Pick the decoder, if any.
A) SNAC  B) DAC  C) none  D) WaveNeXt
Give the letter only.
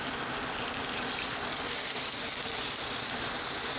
C